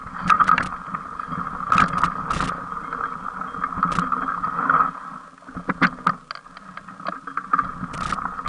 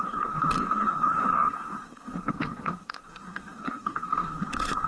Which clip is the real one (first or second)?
first